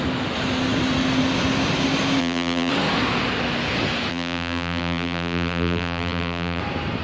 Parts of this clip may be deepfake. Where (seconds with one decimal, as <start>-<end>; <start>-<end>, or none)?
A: 2.2-2.7; 4.1-6.6